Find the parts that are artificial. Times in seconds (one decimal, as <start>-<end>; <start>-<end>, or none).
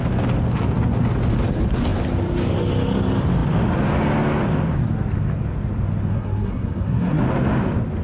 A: 6.1-7.2